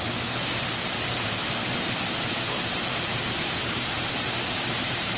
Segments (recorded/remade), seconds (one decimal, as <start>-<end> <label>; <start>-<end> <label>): 0.0-3.6 recorded; 3.6-5.2 remade